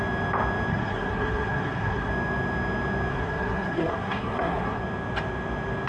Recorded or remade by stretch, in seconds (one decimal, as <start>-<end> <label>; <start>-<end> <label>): 0.0-0.7 recorded; 0.7-2.1 remade; 2.1-3.1 recorded; 3.1-4.8 remade; 4.8-5.9 recorded